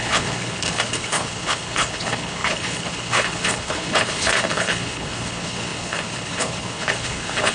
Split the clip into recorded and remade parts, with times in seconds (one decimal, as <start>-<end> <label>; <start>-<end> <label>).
0.0-7.5 remade